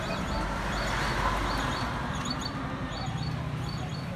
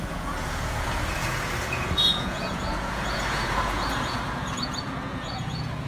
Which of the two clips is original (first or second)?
first